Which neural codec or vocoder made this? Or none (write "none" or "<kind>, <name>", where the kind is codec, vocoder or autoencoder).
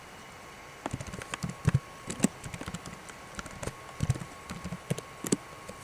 none